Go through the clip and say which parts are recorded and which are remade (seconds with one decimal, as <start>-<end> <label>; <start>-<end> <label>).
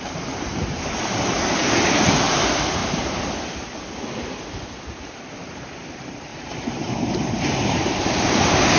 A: 0.0-2.8 remade; 2.8-5.0 recorded; 5.0-8.8 remade